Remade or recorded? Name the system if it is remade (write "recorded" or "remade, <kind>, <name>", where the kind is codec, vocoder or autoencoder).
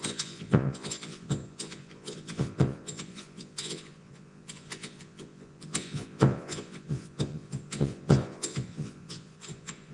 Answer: remade, vocoder, Vocos